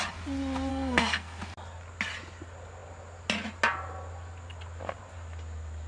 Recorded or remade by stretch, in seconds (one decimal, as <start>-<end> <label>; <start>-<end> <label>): 0.0-0.7 recorded; 0.7-1.4 remade; 1.4-5.9 recorded